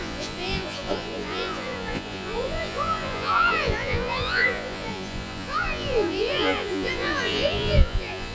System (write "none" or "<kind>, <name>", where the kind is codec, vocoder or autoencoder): vocoder, Vocos